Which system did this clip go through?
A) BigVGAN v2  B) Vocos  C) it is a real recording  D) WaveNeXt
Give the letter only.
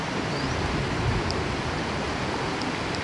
C